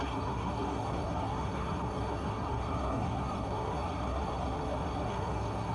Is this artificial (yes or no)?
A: yes